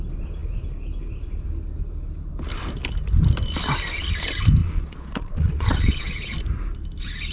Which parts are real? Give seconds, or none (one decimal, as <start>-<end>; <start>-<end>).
0.0-4.6; 6.0-7.3